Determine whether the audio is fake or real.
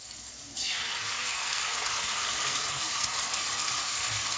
fake